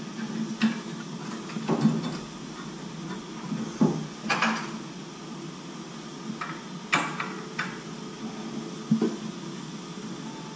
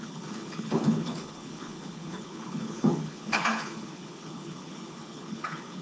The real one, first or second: first